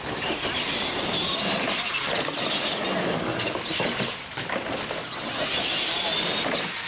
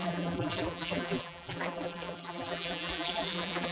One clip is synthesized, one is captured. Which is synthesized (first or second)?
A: second